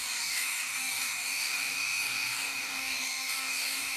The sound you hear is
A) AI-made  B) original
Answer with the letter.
A